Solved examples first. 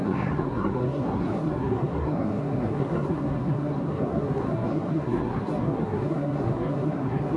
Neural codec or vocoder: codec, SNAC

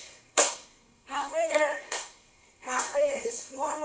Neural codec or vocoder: codec, SNAC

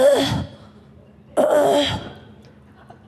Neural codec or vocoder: none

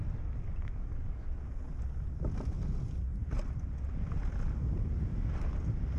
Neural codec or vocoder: none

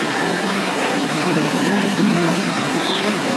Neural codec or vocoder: codec, SNAC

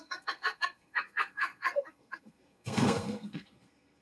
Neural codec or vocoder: codec, SNAC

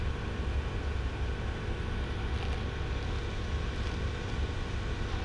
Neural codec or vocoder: none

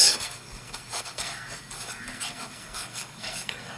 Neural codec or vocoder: codec, SNAC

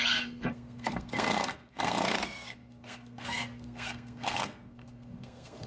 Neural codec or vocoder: codec, SNAC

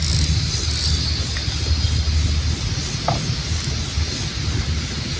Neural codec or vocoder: none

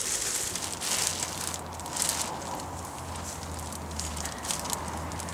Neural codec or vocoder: none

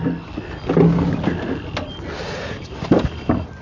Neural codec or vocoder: none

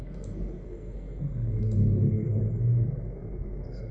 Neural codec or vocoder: codec, SNAC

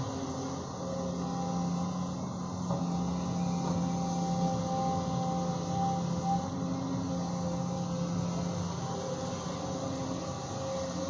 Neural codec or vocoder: none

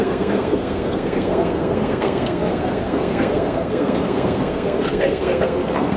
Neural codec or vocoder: codec, SNAC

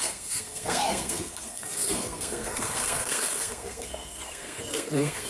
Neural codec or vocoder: codec, SNAC